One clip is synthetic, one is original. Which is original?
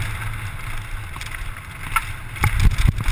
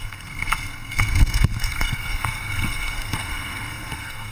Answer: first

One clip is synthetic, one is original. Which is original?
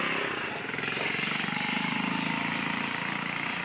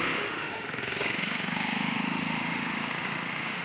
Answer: first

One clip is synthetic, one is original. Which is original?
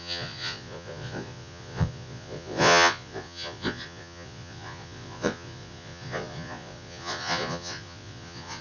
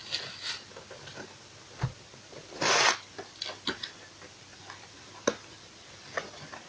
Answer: second